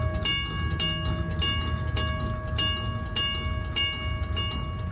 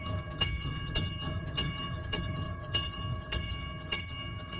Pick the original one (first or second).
first